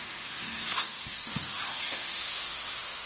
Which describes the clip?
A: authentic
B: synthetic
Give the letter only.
B